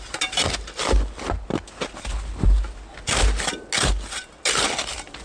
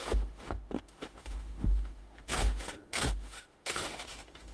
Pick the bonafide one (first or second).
first